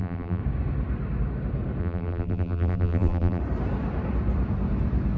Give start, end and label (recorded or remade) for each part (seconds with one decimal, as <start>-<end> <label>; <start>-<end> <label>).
0.0-0.4 remade; 0.4-1.8 recorded; 1.8-3.4 remade; 3.4-5.2 recorded